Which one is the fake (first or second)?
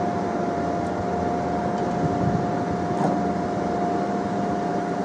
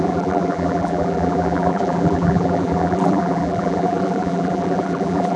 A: second